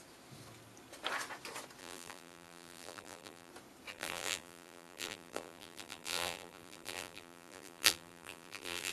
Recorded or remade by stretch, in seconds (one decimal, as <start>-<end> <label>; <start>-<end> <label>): 0.0-1.8 recorded; 1.8-3.5 remade; 3.5-3.9 recorded; 3.9-8.9 remade